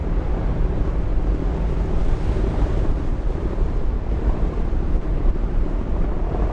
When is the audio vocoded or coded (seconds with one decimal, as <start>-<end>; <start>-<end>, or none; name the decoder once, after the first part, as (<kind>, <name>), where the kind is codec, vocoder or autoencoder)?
0.0-1.1 (vocoder, BigVGAN v2); 1.9-6.5